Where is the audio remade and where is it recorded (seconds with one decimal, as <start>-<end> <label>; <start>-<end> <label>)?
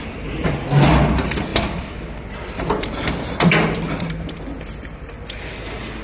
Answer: 0.0-1.5 recorded; 1.5-5.1 remade; 5.1-6.0 recorded